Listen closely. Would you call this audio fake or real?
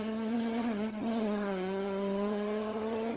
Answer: fake